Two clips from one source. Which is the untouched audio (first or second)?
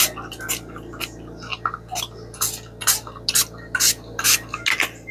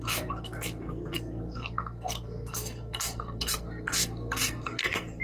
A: first